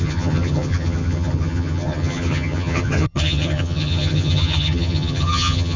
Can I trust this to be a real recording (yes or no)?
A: no